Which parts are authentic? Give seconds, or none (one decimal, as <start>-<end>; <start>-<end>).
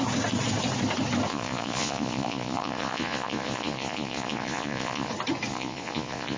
0.0-1.3; 5.1-5.5